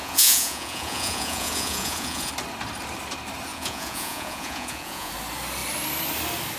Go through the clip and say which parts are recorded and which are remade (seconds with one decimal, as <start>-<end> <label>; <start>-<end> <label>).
0.0-2.3 remade; 2.3-3.5 recorded; 3.5-5.1 remade; 5.1-6.6 recorded